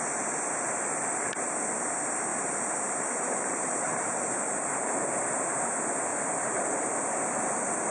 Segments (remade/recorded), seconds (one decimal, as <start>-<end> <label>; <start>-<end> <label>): 0.0-2.3 recorded; 2.3-4.5 remade; 4.5-6.1 recorded; 6.1-7.9 remade